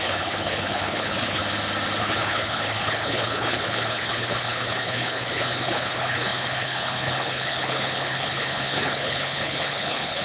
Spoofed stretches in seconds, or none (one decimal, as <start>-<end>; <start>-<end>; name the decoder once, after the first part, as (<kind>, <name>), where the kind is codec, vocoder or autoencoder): 0.0-1.4 (codec, HILCodec); 2.0-10.2